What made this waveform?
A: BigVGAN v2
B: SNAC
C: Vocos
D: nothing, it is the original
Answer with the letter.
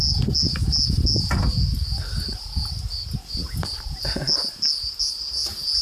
D